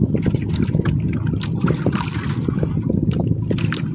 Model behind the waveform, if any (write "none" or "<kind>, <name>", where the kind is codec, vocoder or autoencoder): none